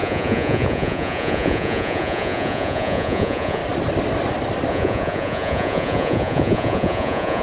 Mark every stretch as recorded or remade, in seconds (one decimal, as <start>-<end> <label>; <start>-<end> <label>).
0.0-3.6 remade; 3.6-4.7 recorded; 4.7-7.4 remade